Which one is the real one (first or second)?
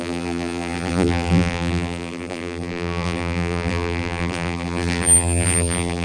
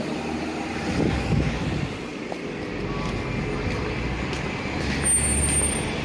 second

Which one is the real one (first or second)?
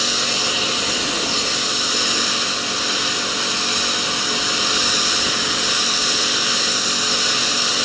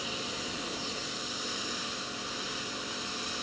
first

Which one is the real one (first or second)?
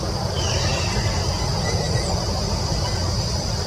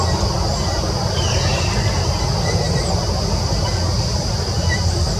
first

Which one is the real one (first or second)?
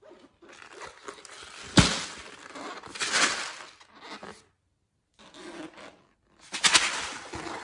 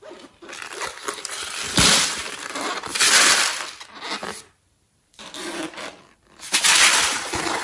first